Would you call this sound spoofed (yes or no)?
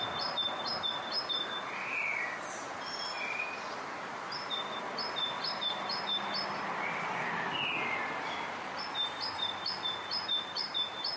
no